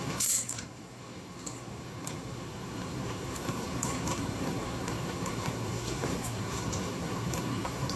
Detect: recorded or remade remade